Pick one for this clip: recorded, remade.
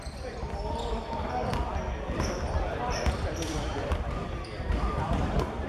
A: remade